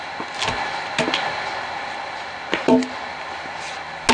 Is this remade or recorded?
recorded